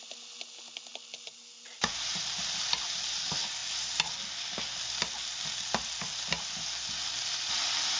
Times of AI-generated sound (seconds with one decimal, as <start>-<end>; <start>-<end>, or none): none